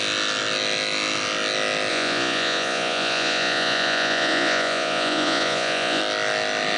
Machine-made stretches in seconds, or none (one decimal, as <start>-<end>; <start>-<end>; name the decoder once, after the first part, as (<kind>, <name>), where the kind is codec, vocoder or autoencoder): 1.9-6.0 (vocoder, Vocos)